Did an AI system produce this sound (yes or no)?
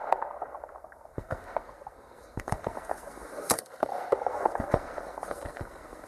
yes